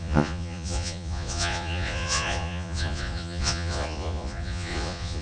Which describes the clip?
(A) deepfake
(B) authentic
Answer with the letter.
A